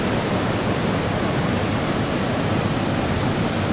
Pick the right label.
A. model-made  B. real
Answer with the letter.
B